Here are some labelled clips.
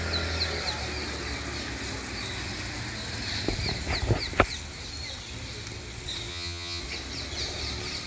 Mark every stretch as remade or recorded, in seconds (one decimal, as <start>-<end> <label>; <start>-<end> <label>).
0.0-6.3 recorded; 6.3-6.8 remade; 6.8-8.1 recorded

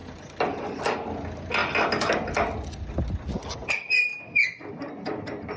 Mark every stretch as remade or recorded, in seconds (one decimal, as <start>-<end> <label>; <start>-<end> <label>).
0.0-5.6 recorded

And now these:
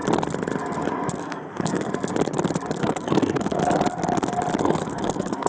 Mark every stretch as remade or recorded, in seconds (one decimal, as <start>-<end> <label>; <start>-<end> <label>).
0.0-1.2 recorded; 1.2-1.9 remade; 1.9-2.8 recorded; 2.8-3.6 remade; 3.6-4.6 recorded; 4.6-5.5 remade

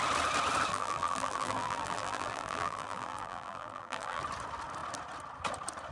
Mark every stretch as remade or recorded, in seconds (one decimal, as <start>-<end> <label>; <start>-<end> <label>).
0.0-0.7 recorded; 0.7-4.2 remade; 4.2-5.9 recorded

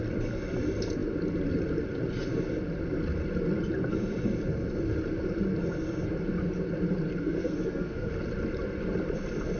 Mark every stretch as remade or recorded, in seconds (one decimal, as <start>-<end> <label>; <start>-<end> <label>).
0.0-7.2 recorded; 7.2-8.1 remade; 8.1-9.6 recorded

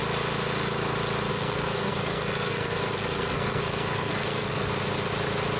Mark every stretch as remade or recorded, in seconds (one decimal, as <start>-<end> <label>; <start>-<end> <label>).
0.0-1.3 recorded; 1.3-4.7 remade; 4.7-5.6 recorded

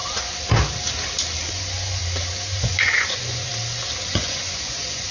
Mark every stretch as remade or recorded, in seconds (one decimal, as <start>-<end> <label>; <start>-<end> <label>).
0.0-1.5 recorded; 1.5-2.0 remade; 2.0-2.6 recorded; 2.6-3.5 remade; 3.5-4.1 recorded; 4.1-5.1 remade

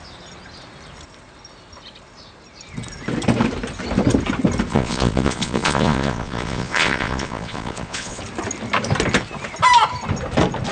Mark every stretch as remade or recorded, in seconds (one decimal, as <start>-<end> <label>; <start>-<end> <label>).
0.0-4.7 recorded; 4.7-8.2 remade; 8.2-10.7 recorded